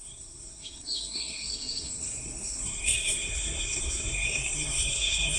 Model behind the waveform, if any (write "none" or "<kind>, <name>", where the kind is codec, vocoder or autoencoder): codec, SNAC